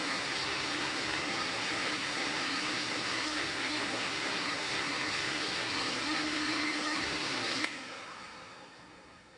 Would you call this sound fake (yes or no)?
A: yes